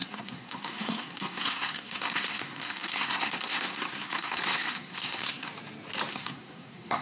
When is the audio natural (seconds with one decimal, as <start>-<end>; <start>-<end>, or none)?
5.5-6.1